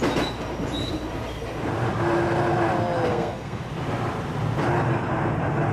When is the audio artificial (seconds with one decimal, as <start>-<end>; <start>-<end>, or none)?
3.1-3.6